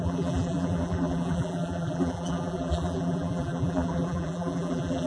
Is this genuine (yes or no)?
no